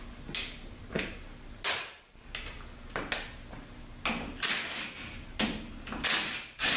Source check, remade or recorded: recorded